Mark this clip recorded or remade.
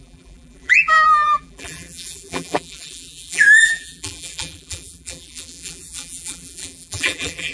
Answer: remade